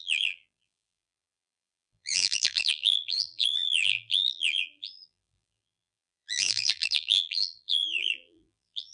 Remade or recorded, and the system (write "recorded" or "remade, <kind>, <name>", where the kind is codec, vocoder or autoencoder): remade, vocoder, BigVGAN v2